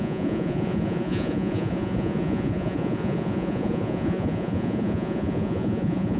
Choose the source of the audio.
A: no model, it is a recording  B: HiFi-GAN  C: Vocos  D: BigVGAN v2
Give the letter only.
C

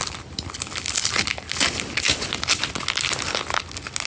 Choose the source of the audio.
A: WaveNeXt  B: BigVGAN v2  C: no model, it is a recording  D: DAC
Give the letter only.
C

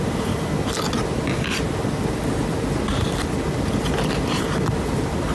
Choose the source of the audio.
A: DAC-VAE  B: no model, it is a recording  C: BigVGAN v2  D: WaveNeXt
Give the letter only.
B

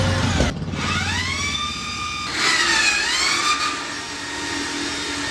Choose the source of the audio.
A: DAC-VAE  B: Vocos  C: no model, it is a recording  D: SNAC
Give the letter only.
C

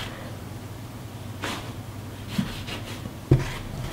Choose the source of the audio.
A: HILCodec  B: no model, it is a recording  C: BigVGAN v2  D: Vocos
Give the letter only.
B